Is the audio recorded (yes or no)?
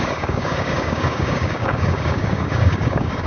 no